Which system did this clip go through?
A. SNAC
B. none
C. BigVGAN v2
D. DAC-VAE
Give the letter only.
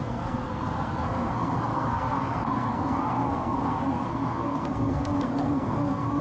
A